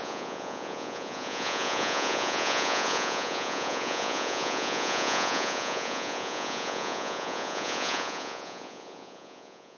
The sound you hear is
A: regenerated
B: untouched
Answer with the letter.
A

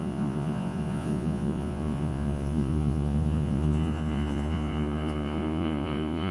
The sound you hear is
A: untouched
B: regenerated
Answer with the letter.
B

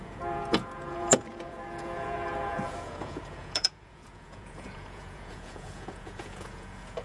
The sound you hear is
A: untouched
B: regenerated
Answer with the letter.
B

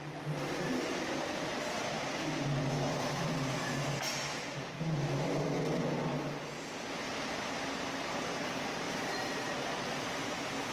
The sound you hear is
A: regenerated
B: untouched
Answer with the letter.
B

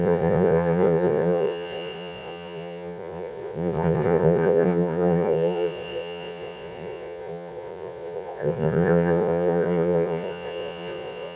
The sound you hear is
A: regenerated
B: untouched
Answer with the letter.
A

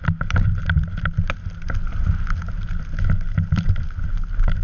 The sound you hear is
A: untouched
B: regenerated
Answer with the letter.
A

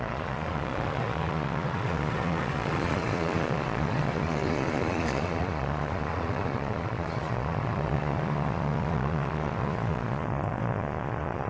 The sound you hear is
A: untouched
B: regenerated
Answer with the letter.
B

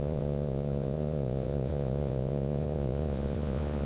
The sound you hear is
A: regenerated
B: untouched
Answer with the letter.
A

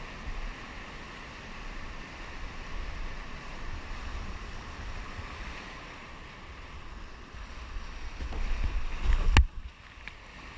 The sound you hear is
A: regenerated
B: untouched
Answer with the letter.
B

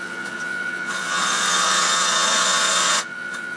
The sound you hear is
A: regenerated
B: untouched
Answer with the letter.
A